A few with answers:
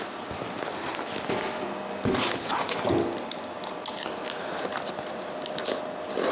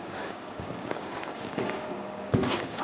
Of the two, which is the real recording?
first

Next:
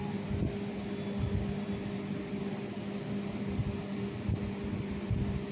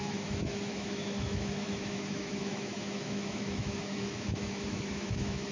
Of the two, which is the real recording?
first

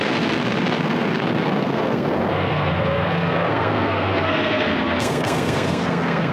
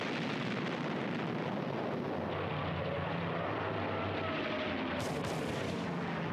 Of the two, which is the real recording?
second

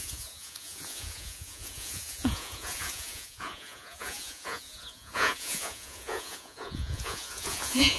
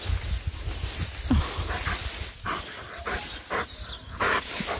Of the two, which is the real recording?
second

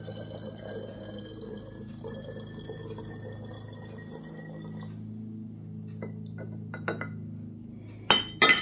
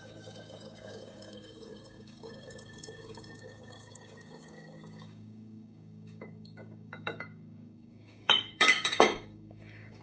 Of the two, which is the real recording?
first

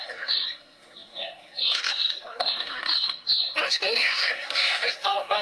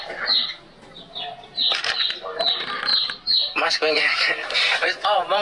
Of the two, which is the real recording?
second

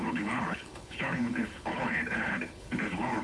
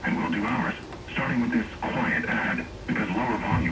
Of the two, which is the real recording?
second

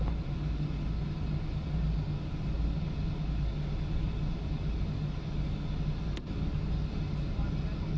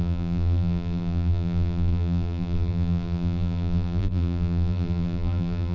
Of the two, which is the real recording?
first